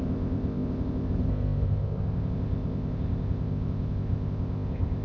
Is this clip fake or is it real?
fake